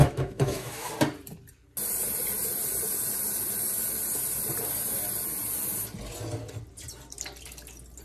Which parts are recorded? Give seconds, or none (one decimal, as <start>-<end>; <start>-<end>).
0.9-8.0